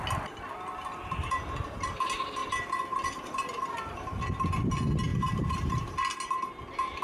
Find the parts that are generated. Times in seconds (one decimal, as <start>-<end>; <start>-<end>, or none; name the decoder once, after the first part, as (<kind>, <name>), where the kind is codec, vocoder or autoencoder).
1.0-2.0 (vocoder, BigVGAN v2); 2.4-4.2; 5.1-6.0